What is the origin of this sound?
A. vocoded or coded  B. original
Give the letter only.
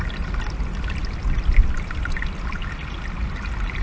B